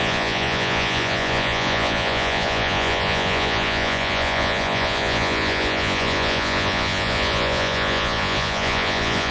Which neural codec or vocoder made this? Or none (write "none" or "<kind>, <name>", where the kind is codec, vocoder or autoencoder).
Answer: vocoder, Vocos